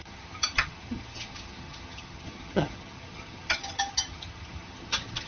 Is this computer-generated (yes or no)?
yes